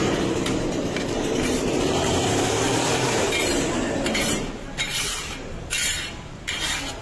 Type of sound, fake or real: fake